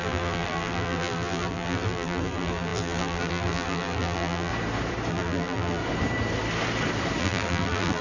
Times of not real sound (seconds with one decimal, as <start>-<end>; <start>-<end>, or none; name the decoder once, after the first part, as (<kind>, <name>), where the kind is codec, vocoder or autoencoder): 0.0-4.5 (vocoder, BigVGAN v2); 5.1-5.8; 7.2-8.0